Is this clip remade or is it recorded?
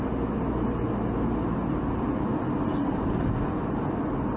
recorded